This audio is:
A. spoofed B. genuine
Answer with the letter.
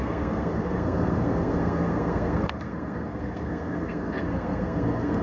A